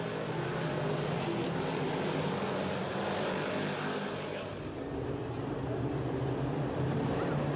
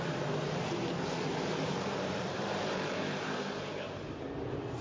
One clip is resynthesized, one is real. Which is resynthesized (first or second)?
second